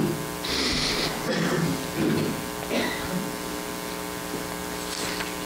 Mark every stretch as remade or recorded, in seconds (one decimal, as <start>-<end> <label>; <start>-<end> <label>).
0.0-5.5 recorded